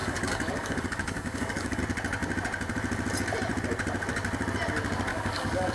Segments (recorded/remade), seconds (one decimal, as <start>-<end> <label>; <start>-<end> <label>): 0.0-1.8 remade; 1.8-5.1 recorded; 5.1-5.7 remade